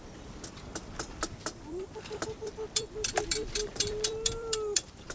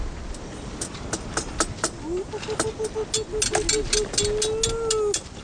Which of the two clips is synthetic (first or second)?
first